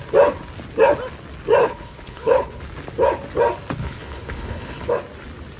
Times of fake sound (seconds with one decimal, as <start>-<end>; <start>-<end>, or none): 1.6-2.6; 3.8-4.9